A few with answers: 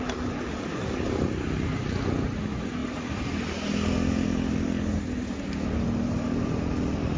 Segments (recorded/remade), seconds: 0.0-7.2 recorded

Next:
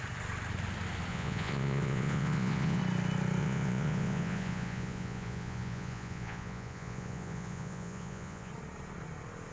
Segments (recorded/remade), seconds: 0.0-1.1 recorded; 1.1-2.8 remade; 2.8-3.4 recorded; 3.4-8.5 remade; 8.5-9.5 recorded

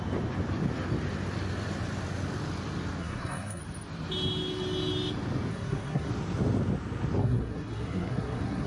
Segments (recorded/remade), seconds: 0.0-3.0 recorded; 3.0-3.6 remade; 3.6-5.5 recorded; 5.5-6.1 remade; 6.1-7.2 recorded; 7.2-8.7 remade

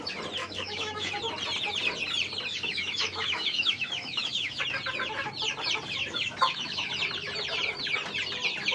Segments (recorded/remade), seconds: 0.0-0.4 recorded; 0.4-1.1 remade; 1.1-2.5 recorded; 2.5-4.6 remade; 4.6-6.0 recorded; 6.0-6.9 remade; 6.9-8.7 recorded

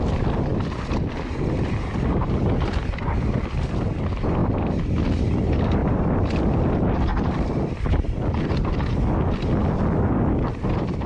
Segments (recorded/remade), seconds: 0.0-0.5 recorded; 0.5-2.8 remade; 2.8-4.4 recorded; 4.4-5.3 remade; 5.3-5.8 recorded; 5.8-6.4 remade; 6.4-7.1 recorded; 7.1-8.9 remade; 8.9-11.1 recorded